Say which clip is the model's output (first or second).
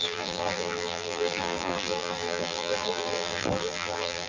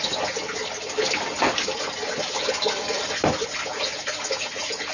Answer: first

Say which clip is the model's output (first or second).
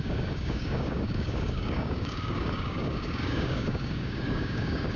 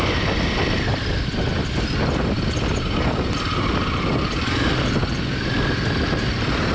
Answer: first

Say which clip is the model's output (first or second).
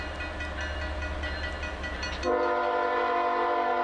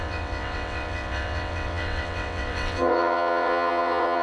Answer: second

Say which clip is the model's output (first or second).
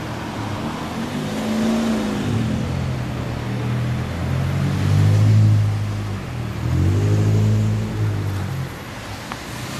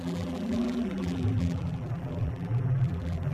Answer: second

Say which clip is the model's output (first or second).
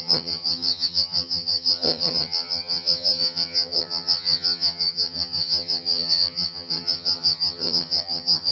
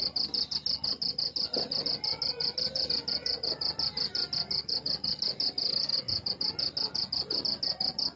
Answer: first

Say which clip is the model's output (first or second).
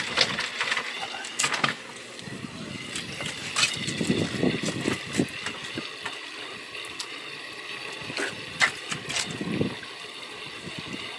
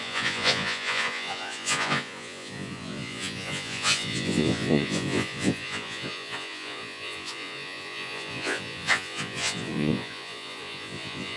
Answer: second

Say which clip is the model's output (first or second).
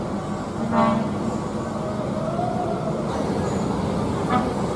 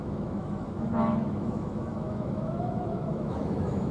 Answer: second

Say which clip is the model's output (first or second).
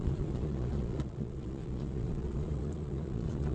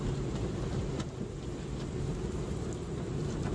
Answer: first